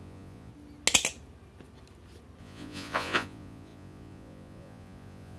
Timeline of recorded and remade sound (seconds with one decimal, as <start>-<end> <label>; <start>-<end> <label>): 0.0-0.5 remade; 0.5-2.4 recorded; 2.4-5.4 remade